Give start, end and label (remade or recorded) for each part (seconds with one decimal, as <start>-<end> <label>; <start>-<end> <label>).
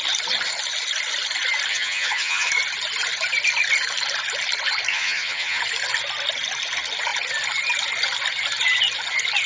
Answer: 0.0-1.7 recorded; 1.7-2.5 remade; 2.5-4.9 recorded; 4.9-5.6 remade; 5.6-9.5 recorded